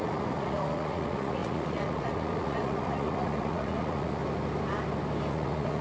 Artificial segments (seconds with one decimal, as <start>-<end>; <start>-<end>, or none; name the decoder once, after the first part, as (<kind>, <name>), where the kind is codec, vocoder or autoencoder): 0.0-4.2 (vocoder, Vocos); 5.3-5.8